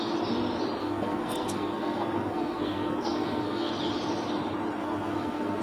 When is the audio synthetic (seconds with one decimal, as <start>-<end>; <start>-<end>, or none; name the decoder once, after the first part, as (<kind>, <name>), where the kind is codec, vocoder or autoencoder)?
0.8-3.7 (codec, SNAC); 4.8-5.6